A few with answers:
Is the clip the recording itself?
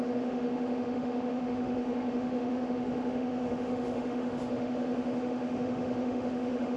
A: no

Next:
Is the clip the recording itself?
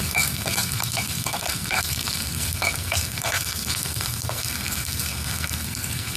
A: no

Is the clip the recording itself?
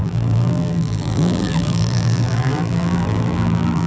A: no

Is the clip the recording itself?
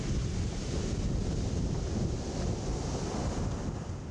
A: yes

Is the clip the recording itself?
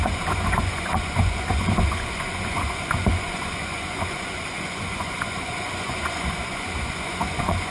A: no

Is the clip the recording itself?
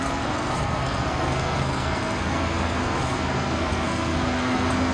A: no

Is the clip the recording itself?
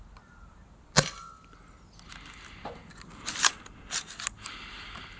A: yes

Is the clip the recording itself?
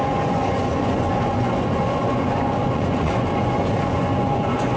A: no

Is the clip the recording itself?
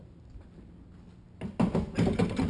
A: yes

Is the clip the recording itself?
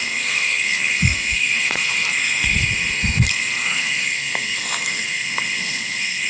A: no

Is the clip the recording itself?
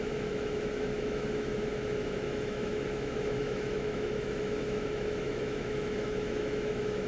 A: no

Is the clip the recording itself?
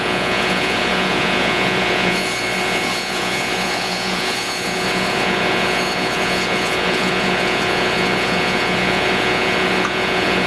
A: no